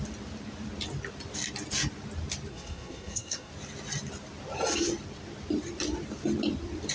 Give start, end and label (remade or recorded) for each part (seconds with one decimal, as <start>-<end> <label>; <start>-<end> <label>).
0.0-2.5 recorded; 2.5-3.5 remade; 3.5-6.9 recorded